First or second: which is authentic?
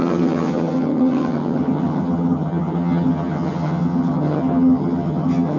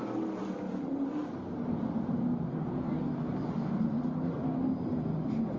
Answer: second